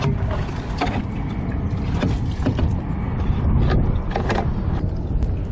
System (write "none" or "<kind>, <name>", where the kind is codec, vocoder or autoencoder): none